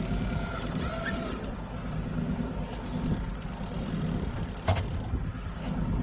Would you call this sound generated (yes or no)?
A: no